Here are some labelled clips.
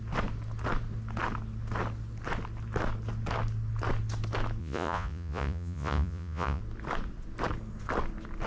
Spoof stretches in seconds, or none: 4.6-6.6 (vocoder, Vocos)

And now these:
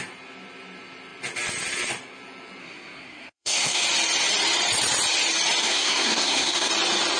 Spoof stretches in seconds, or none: 2.6-3.8 (codec, SNAC); 5.6-6.7

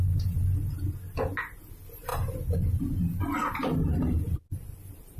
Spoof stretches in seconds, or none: 2.1-2.8 (vocoder, BigVGAN v2); 3.4-5.2

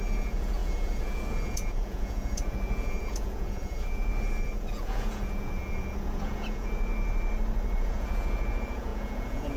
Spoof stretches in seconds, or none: 0.0-6.9 (vocoder, Vocos); 7.8-9.6